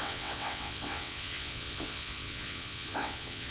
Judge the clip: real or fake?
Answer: fake